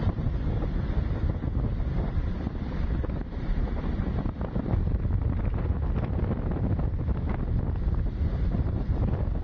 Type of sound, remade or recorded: recorded